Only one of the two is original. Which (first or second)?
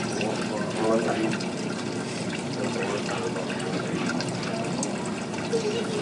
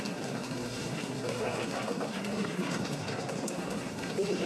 first